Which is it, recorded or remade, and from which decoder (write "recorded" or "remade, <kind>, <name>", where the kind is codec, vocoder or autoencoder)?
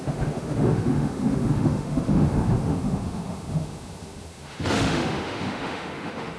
remade, autoencoder, DAC-VAE